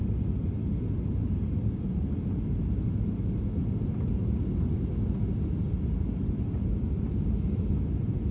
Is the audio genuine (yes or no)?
yes